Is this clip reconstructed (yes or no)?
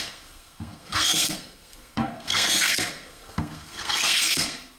yes